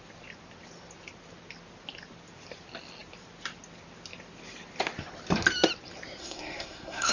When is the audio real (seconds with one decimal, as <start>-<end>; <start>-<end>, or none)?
0.0-6.2